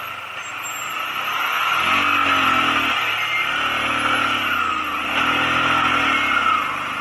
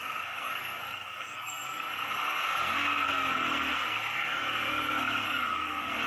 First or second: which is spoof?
second